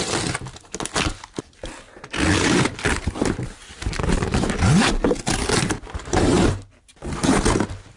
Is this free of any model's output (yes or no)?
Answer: yes